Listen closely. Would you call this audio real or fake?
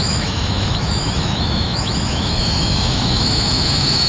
fake